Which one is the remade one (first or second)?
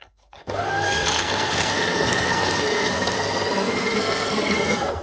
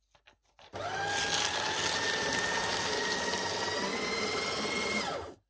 first